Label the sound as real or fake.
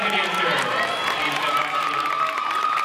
fake